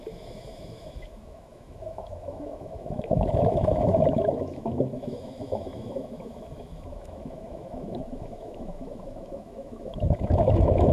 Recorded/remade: remade